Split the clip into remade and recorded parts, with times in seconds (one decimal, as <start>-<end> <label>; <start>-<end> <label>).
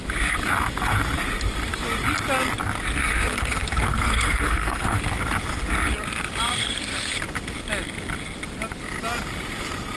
0.0-3.0 recorded; 3.0-5.0 remade; 5.0-6.6 recorded; 6.6-7.2 remade; 7.2-10.0 recorded